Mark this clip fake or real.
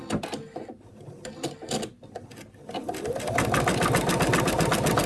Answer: real